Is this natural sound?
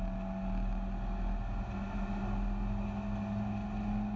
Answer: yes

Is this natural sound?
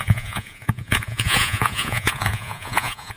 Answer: no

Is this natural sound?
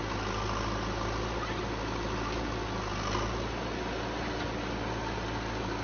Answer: yes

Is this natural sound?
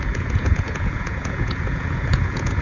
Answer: no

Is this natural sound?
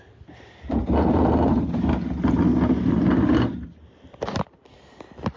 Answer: yes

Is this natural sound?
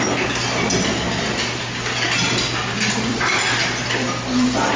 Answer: yes